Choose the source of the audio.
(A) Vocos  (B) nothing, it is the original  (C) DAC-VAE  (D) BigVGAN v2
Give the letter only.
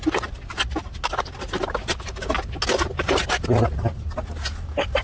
B